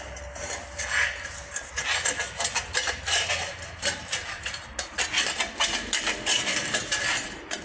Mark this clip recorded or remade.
recorded